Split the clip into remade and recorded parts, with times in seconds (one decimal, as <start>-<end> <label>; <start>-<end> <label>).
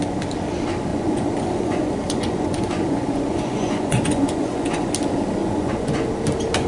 0.0-0.9 recorded; 0.9-4.9 remade; 4.9-5.4 recorded; 5.4-6.1 remade; 6.1-6.7 recorded